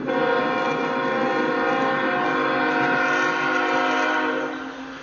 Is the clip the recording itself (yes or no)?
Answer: yes